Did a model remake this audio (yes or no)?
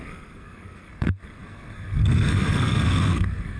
yes